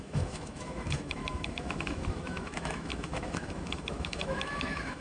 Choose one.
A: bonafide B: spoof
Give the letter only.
B